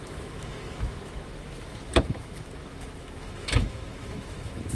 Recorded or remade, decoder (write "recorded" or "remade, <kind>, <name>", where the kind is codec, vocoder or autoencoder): remade, autoencoder, DAC-VAE